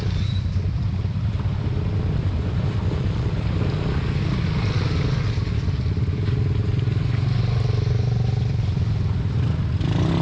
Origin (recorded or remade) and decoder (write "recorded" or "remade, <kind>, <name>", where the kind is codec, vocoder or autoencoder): recorded